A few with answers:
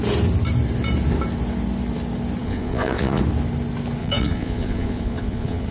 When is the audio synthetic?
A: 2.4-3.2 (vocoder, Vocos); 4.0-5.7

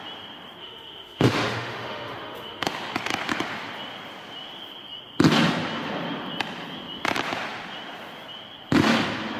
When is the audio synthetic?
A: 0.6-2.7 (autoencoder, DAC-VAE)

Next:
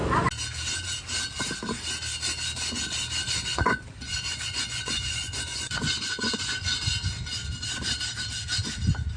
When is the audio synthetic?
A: 3.5-6.8 (vocoder, Vocos)

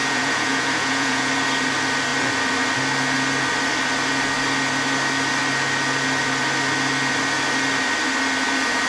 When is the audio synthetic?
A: 0.0-1.3 (vocoder, Vocos)